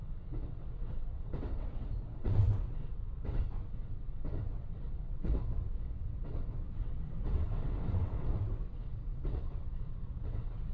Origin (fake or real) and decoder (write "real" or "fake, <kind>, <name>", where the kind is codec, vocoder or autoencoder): fake, vocoder, WaveNeXt